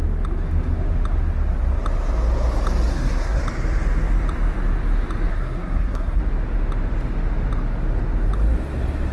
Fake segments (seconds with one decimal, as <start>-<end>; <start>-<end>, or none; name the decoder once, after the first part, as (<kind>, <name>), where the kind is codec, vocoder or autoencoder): 2.9-3.4 (codec, SNAC); 5.3-6.2